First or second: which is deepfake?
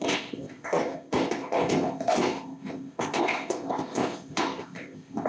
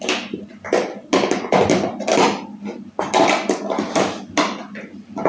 first